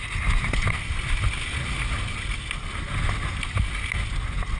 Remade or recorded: recorded